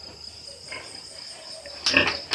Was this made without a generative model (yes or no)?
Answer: yes